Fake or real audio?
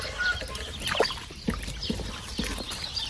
real